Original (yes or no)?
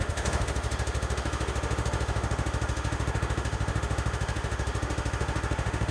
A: no